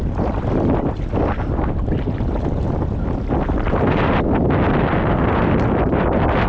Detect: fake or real real